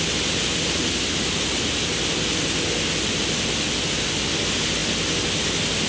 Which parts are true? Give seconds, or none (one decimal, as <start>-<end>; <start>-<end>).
0.0-5.9